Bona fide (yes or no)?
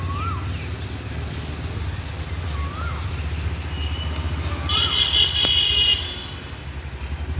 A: yes